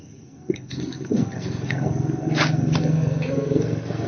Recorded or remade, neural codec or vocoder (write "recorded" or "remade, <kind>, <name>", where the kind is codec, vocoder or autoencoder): remade, codec, SNAC